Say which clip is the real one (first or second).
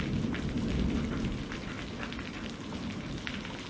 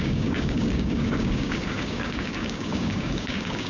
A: first